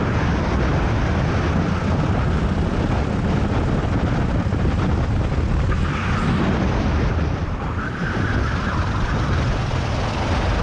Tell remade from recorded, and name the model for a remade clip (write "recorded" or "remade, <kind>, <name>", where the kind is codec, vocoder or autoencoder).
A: recorded